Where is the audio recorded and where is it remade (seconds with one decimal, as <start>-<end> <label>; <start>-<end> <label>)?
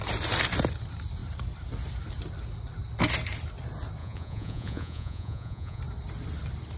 0.0-4.0 recorded; 4.0-5.8 remade; 5.8-6.8 recorded